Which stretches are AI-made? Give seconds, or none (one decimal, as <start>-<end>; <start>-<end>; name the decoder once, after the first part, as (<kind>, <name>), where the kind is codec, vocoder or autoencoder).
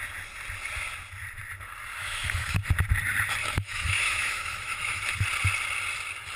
2.0-2.6 (autoencoder, DAC-VAE); 3.4-5.0